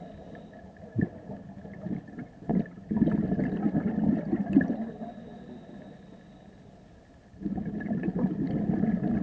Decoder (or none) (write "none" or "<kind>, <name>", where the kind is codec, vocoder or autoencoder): none